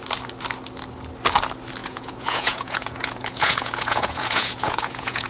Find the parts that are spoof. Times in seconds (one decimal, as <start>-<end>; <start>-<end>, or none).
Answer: 1.8-5.3